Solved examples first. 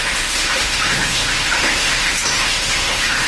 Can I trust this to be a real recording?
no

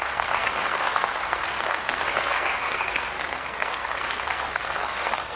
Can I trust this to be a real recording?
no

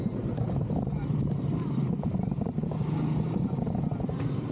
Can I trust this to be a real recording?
no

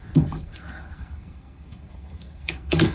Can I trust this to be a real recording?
no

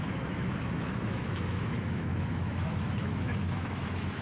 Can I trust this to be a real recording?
no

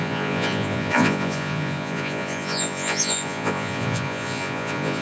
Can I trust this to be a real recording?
no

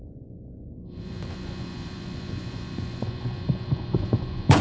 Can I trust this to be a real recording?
no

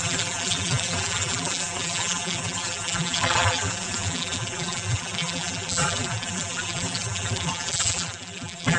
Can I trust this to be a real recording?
no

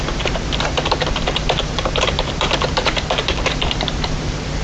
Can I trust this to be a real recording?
no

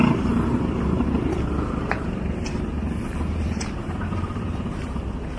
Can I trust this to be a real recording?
no